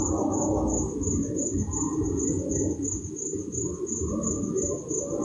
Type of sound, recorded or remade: recorded